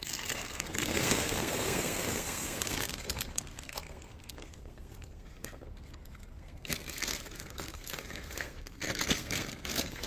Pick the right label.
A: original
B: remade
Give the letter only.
B